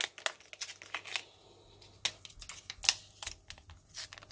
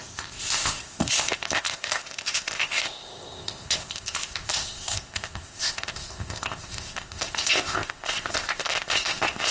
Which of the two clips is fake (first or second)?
second